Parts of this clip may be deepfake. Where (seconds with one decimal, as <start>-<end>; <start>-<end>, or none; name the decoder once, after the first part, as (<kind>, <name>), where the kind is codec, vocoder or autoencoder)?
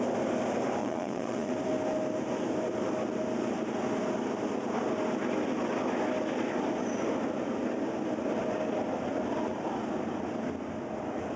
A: 0.8-1.5 (vocoder, Vocos)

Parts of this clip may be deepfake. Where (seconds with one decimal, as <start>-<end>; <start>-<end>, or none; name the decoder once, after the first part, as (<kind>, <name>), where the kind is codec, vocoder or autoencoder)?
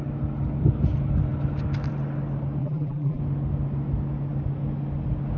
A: 2.6-3.2 (vocoder, BigVGAN v2)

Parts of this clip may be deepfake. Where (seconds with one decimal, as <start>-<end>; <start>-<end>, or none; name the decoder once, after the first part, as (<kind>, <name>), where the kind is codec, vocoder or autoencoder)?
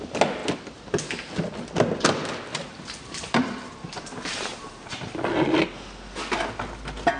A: 2.5-5.1 (vocoder, BigVGAN v2)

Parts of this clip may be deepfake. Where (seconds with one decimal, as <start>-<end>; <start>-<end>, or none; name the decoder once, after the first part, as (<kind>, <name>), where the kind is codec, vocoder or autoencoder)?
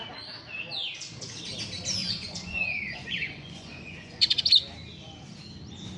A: 2.0-4.4 (vocoder, Vocos)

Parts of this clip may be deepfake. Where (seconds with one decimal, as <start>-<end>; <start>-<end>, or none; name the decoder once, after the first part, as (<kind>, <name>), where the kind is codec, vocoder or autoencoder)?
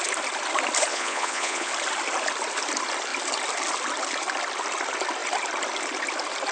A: 0.9-1.7 (vocoder, Vocos)